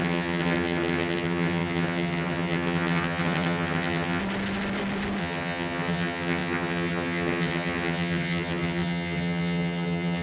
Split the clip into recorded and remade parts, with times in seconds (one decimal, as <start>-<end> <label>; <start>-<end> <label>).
0.0-4.2 remade; 4.2-5.2 recorded; 5.2-10.2 remade